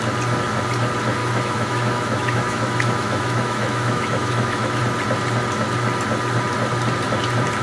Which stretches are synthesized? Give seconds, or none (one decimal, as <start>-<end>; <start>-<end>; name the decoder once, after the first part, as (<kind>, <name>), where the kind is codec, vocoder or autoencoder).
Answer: 1.2-4.8 (autoencoder, DAC-VAE)